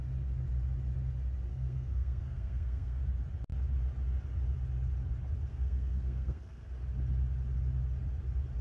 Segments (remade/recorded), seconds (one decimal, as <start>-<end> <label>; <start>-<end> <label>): 0.0-1.5 recorded; 1.5-3.0 remade; 3.0-5.5 recorded; 5.5-6.7 remade; 6.7-8.6 recorded